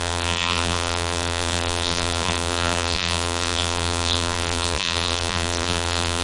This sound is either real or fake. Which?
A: fake